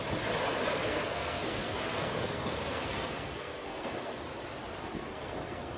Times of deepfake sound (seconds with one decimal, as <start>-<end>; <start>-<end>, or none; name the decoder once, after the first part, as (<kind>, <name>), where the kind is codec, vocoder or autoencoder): 0.7-4.2 (codec, SNAC); 4.8-5.8